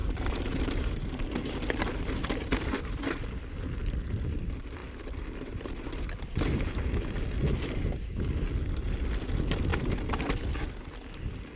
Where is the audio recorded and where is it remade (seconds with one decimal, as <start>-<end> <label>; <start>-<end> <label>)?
0.0-3.1 remade; 3.1-11.6 recorded